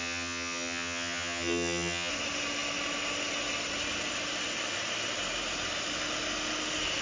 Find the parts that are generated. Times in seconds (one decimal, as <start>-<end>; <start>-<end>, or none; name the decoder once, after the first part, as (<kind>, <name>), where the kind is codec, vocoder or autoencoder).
0.0-2.1 (vocoder, HiFi-GAN)